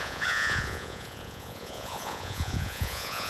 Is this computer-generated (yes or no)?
yes